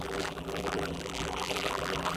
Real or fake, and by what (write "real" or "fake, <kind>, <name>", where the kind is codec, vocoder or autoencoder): fake, vocoder, BigVGAN v2